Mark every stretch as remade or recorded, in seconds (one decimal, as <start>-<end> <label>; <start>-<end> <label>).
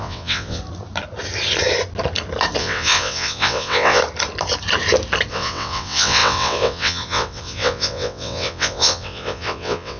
0.0-0.6 remade; 0.6-2.6 recorded; 2.6-4.0 remade; 4.0-5.3 recorded; 5.3-10.0 remade